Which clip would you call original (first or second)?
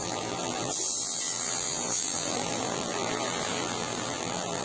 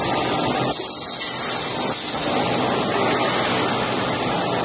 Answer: second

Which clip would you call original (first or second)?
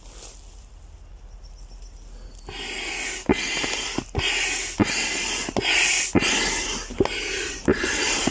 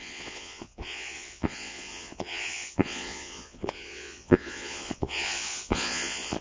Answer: first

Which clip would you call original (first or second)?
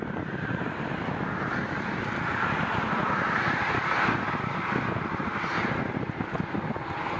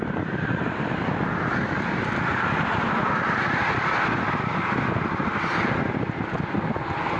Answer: first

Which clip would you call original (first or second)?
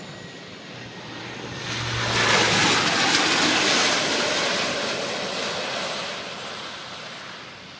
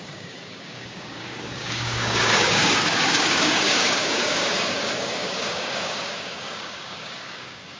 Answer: first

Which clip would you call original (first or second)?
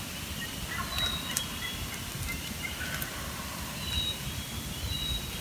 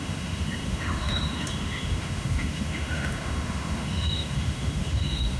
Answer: first